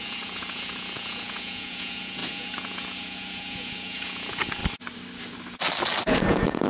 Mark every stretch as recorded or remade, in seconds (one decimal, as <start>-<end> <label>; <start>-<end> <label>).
0.0-4.6 remade; 4.6-6.1 recorded; 6.1-6.7 remade